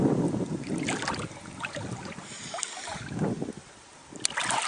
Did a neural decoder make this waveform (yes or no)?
no